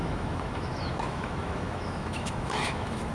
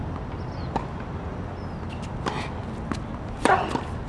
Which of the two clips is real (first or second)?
second